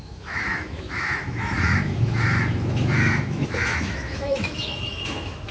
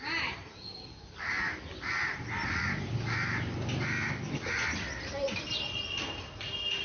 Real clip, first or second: second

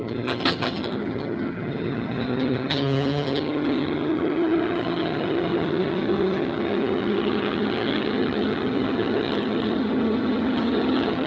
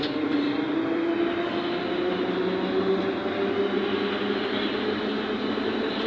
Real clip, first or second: second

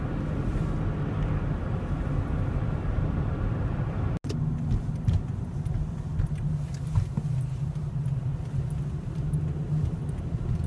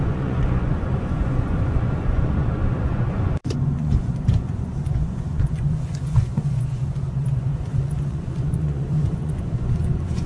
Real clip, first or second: first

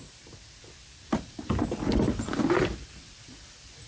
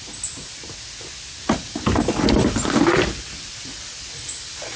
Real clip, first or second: second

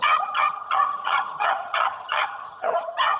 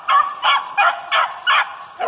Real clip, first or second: second